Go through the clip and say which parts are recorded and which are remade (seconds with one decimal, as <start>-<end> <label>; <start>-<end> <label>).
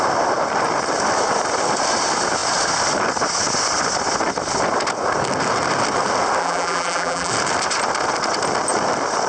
0.0-6.4 recorded; 6.4-7.3 remade; 7.3-9.3 recorded